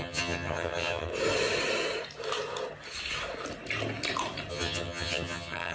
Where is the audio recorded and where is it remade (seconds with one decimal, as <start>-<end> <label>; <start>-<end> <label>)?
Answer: 0.0-1.1 remade; 1.1-4.5 recorded; 4.5-5.7 remade